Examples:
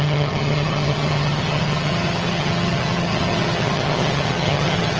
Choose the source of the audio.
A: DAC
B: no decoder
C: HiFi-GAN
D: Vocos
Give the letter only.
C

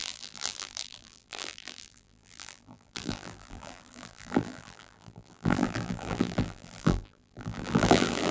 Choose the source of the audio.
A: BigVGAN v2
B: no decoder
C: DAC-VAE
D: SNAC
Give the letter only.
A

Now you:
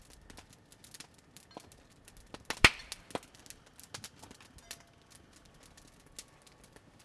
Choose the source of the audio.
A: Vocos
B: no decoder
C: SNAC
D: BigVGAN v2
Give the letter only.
B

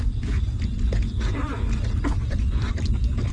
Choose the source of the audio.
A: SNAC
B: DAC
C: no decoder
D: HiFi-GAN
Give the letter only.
C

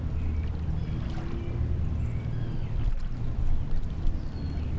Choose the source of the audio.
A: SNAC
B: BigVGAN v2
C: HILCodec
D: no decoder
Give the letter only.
D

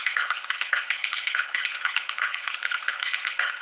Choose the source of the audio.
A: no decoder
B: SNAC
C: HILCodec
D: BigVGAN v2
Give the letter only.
C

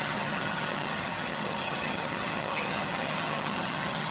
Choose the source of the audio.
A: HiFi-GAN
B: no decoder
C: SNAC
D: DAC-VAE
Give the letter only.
A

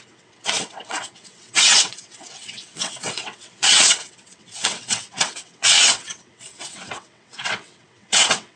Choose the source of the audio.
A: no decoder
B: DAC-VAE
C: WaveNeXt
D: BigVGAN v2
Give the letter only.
C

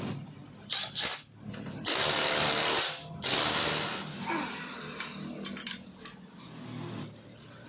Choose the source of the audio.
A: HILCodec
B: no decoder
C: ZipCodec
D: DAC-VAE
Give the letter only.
B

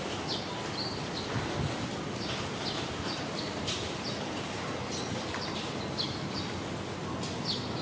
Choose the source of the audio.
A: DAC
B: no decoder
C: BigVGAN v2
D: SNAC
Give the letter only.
B